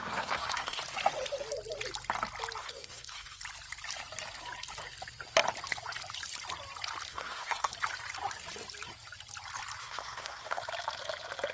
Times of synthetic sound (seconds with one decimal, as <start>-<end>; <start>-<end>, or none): 0.0-0.8; 2.6-3.4; 7.1-7.7; 9.8-10.6